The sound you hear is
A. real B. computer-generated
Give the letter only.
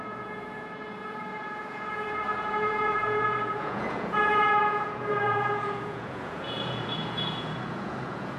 B